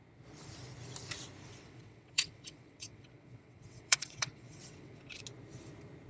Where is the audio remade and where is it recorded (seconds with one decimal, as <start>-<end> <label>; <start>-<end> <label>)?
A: 0.0-1.5 recorded; 1.5-5.2 remade; 5.2-6.1 recorded